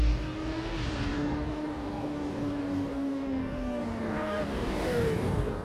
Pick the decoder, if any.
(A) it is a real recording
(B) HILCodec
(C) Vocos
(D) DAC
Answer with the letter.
D